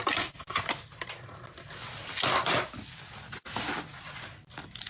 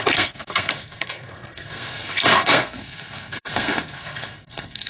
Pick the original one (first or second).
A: first